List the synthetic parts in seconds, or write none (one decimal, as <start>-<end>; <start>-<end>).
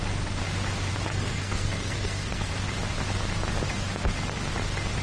1.1-2.5